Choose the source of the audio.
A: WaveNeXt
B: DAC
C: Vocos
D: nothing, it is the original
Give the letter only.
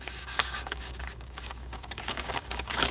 B